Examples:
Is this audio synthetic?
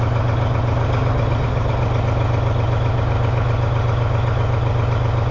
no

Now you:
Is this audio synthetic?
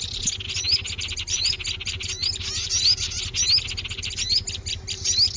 no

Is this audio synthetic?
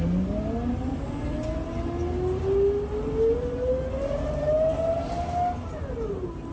no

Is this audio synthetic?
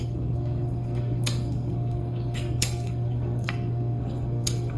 yes